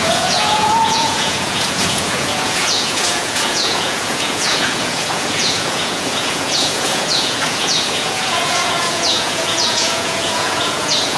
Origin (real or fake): fake